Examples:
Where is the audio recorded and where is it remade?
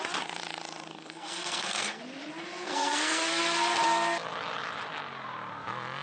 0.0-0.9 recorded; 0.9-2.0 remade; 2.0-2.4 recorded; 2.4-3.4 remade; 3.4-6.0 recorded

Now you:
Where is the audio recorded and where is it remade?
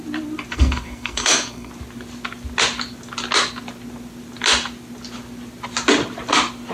0.0-0.5 recorded; 0.5-1.7 remade; 1.7-6.7 recorded